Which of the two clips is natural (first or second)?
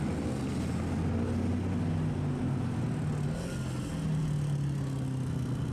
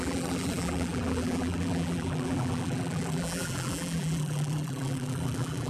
first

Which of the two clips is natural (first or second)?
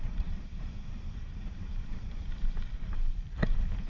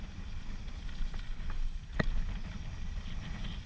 second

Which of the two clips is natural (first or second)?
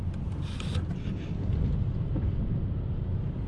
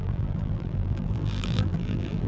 first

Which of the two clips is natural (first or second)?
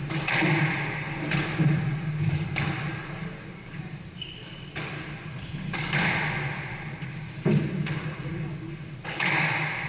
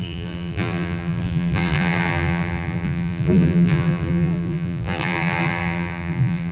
first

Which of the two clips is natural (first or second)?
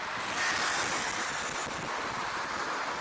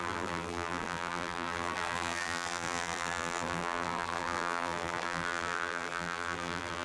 first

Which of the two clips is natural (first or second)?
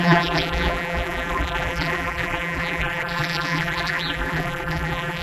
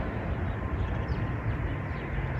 second